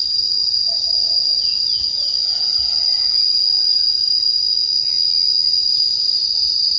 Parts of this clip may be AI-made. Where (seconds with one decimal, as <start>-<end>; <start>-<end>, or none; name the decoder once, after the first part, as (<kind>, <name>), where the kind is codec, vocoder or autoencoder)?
4.7-5.5 (vocoder, Vocos)